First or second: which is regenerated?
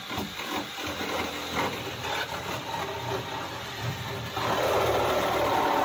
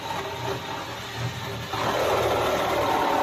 first